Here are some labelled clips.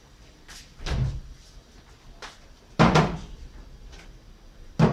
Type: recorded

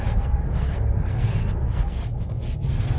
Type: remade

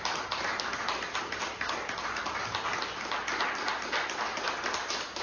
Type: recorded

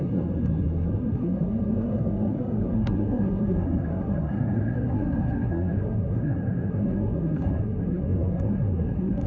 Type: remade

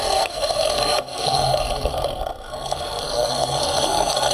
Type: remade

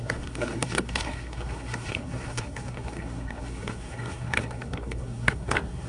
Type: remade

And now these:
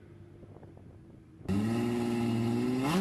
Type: recorded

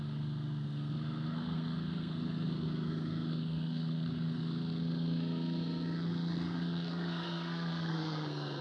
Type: remade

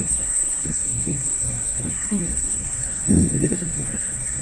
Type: remade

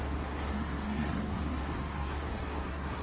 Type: remade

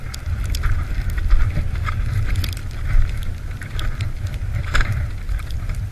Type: recorded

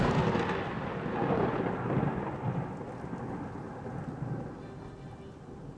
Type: recorded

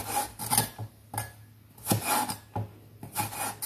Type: recorded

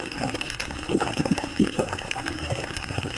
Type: remade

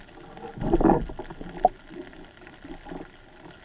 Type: recorded